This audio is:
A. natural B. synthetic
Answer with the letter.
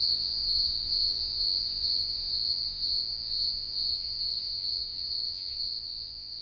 B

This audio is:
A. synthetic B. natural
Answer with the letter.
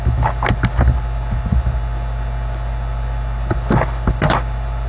B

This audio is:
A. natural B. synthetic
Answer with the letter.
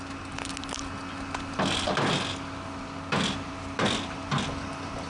A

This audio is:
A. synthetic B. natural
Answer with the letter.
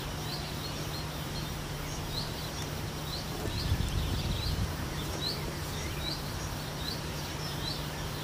A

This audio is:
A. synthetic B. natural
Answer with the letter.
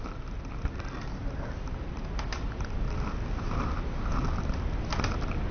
B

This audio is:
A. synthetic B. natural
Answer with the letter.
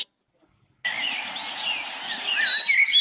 B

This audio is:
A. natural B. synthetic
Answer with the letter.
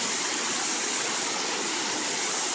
A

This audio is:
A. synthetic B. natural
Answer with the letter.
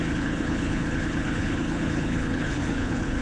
A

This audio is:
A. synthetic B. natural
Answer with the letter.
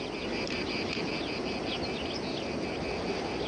B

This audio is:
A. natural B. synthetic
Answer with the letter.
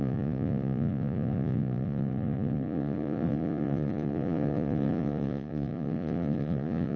B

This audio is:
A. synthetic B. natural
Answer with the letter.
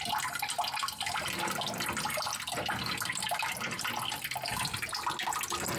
B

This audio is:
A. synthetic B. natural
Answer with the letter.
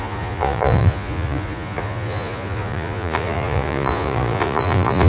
A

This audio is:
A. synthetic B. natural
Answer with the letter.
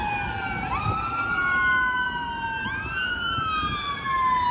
B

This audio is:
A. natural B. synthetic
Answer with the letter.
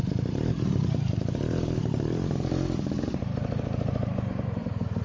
B